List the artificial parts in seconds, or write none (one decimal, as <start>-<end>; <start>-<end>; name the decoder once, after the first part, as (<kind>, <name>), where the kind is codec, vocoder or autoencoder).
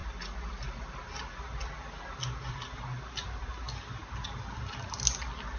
none